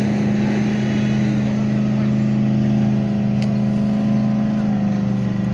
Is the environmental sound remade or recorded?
recorded